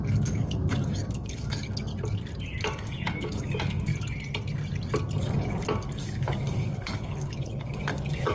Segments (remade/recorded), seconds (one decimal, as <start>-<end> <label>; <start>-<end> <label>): 0.0-1.9 remade; 1.9-2.6 recorded; 2.6-3.9 remade; 3.9-5.2 recorded; 5.2-8.3 remade